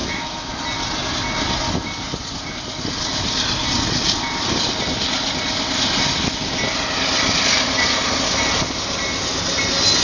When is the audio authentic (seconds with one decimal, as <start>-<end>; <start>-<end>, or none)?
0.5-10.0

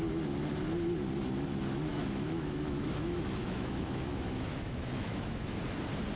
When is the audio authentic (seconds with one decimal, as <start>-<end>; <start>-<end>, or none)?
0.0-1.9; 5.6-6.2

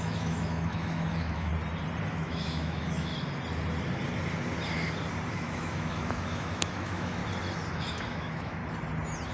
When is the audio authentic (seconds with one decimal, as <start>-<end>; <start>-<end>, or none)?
1.5-2.1; 3.1-5.3; 7.2-7.7; 8.6-9.3

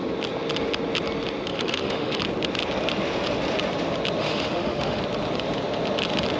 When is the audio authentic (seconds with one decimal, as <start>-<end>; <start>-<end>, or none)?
0.0-1.5; 2.2-4.2; 5.0-6.4

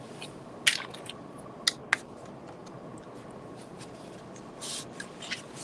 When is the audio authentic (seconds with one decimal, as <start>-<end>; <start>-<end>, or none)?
0.0-5.6

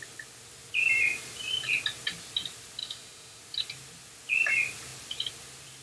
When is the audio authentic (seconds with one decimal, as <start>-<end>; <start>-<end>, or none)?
0.0-2.8; 3.4-5.8